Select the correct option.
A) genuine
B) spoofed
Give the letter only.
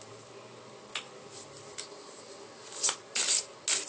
A